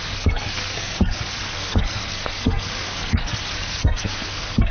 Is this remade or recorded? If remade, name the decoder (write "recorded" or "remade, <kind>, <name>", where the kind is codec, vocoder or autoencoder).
remade, codec, SNAC